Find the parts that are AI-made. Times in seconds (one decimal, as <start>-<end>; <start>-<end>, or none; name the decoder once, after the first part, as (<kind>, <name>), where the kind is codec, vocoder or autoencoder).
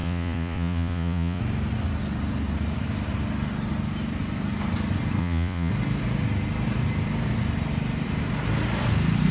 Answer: 0.0-1.4 (vocoder, Vocos); 5.2-5.7